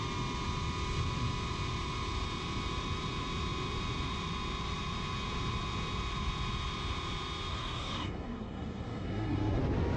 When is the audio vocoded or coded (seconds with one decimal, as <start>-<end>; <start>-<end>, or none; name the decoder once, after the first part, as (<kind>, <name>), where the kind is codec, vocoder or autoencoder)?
7.5-9.6 (codec, SNAC)